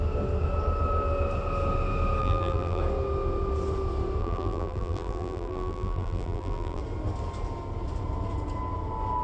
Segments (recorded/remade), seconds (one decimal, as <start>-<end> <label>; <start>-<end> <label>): 0.0-2.2 recorded; 2.2-2.8 remade; 2.8-4.2 recorded; 4.2-6.8 remade; 6.8-9.2 recorded